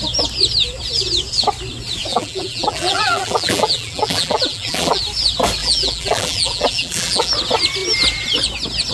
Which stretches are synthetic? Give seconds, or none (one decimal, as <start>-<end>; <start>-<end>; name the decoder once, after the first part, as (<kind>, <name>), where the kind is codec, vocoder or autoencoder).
2.1-5.0 (vocoder, BigVGAN v2); 5.6-7.3